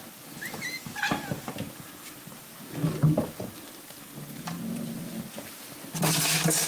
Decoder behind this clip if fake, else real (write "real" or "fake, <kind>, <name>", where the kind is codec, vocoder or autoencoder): real